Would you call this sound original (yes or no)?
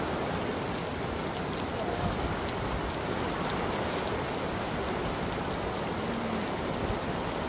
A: yes